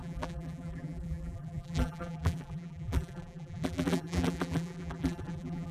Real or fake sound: fake